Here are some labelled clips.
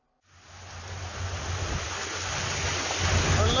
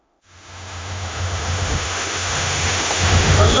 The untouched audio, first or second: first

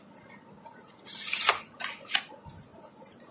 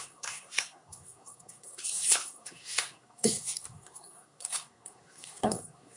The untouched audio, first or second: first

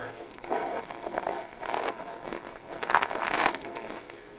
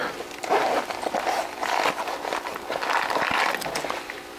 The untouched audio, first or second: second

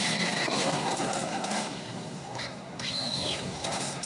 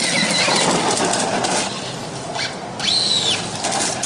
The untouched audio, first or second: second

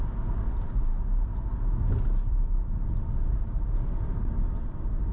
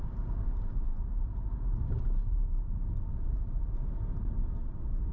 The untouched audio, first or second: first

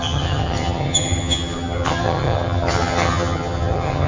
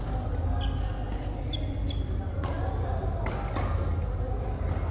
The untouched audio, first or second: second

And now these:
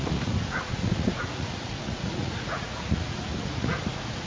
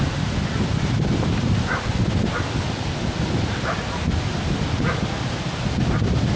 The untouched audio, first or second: second